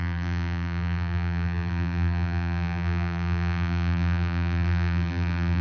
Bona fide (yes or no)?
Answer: no